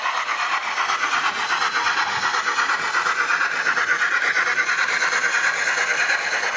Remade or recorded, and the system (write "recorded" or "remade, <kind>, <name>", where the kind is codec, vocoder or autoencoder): recorded